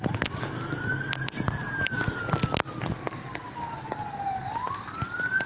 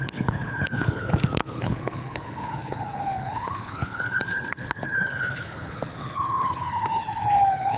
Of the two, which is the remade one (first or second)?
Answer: second